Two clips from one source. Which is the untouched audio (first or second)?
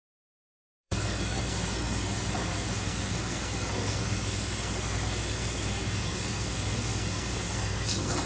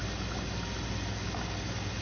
second